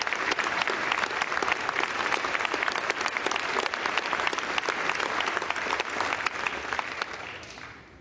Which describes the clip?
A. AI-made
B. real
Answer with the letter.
B